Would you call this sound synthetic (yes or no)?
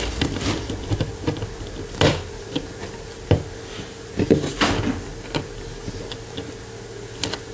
no